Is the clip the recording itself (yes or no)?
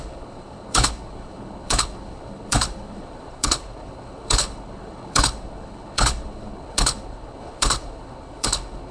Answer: no